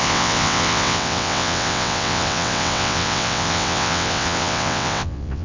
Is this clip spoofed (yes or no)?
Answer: yes